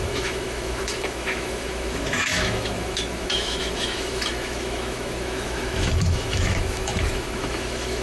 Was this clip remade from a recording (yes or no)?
yes